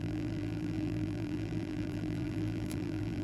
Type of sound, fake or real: fake